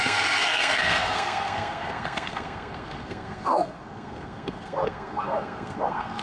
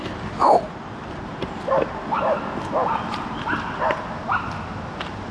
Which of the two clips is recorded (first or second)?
second